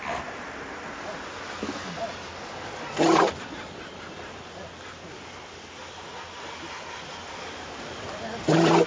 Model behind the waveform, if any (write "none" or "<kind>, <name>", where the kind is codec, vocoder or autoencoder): none